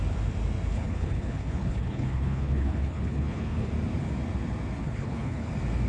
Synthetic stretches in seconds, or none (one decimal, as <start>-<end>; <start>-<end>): 0.7-3.7; 4.8-5.5

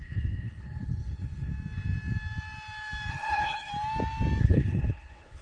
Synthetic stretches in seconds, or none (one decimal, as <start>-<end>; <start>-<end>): 0.0-1.5; 3.1-3.7; 4.4-5.4

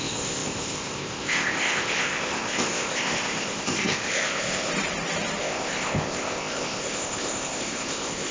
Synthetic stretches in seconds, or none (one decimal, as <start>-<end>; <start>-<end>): 0.0-4.7; 5.4-8.3

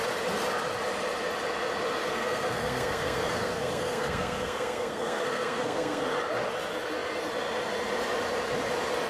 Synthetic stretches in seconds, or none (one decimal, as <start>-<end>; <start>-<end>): 2.0-6.0

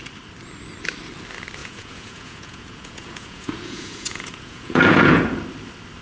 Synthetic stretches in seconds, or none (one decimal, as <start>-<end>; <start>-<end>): 1.6-5.2